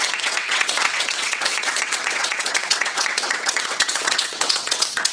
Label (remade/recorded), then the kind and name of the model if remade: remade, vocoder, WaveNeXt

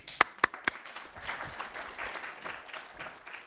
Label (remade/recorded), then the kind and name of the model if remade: recorded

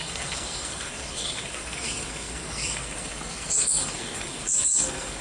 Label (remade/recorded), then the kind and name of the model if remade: remade, codec, SNAC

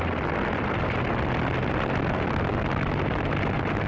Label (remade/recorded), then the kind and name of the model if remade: recorded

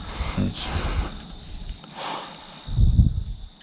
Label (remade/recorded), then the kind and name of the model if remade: recorded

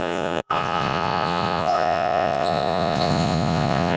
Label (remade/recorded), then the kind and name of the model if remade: remade, vocoder, Vocos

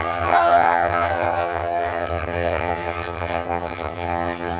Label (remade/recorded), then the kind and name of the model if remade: remade, vocoder, HiFi-GAN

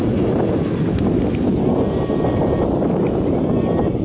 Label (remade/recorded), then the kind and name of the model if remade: recorded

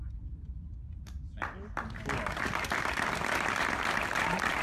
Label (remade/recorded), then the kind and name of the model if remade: recorded